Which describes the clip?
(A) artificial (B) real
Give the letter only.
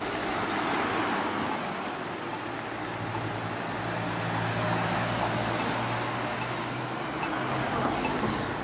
B